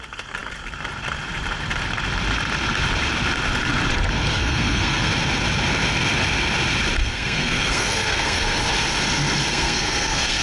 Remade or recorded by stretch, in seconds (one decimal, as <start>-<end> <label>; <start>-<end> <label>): 0.0-4.3 recorded; 4.3-5.1 remade; 5.1-7.0 recorded; 7.0-8.6 remade; 8.6-9.5 recorded; 9.5-10.4 remade